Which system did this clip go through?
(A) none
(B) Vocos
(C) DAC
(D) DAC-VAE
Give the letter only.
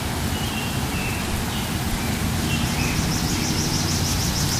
A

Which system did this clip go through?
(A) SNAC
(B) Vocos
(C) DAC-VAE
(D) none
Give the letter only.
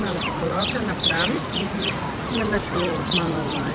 B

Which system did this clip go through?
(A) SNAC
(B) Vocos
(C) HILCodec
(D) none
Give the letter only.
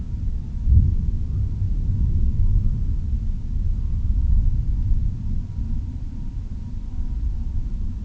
D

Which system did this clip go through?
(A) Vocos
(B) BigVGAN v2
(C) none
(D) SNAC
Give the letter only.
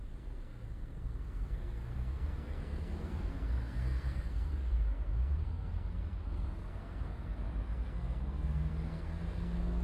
D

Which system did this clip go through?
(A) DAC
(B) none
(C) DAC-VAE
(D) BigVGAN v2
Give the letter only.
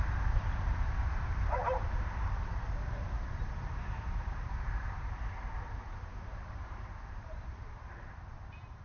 D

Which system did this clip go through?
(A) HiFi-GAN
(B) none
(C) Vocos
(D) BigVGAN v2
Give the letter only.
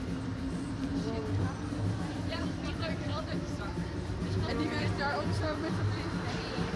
D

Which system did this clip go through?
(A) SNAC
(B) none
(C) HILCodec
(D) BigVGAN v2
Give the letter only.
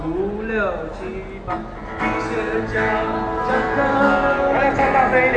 B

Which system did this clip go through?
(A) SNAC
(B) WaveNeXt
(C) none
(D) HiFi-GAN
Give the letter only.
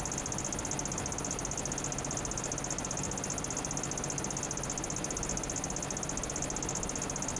C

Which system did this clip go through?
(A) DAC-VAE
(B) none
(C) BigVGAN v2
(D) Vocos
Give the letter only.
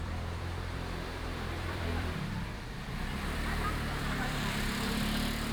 C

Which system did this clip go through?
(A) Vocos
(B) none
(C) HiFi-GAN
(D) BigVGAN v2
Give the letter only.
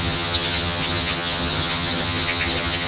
C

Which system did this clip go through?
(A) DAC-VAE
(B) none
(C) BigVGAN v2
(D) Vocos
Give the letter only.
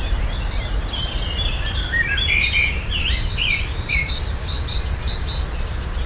C